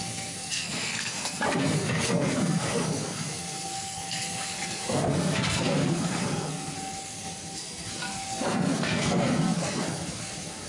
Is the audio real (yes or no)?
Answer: no